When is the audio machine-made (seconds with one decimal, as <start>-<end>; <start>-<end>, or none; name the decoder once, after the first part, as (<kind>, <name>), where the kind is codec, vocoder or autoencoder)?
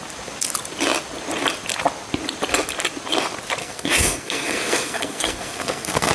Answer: 3.6-6.1 (codec, SNAC)